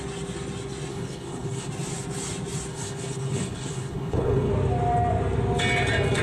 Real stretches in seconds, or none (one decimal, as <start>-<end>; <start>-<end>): 0.0-0.9; 1.7-2.7; 4.5-6.2